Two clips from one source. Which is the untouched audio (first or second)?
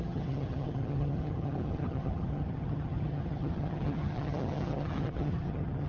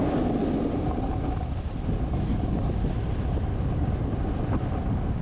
second